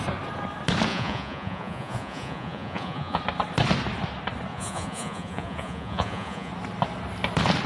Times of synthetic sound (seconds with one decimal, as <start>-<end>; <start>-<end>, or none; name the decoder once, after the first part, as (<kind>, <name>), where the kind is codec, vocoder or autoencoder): 0.9-3.2 (vocoder, Vocos); 4.5-6.5